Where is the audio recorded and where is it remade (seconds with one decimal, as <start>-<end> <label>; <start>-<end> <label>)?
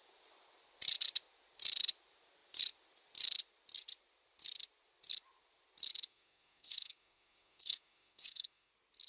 0.0-6.1 recorded; 6.1-8.7 remade; 8.7-9.1 recorded